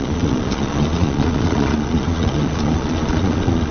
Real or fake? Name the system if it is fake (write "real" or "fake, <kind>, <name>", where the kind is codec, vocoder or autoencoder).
fake, vocoder, Vocos